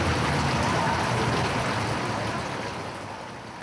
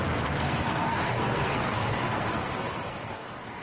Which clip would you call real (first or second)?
first